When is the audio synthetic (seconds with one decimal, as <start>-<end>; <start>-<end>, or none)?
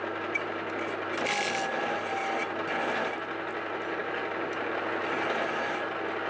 none